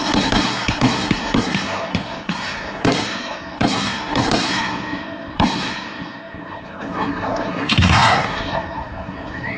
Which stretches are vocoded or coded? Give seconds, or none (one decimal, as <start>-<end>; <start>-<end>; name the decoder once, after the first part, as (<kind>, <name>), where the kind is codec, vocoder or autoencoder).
0.0-9.6 (codec, SNAC)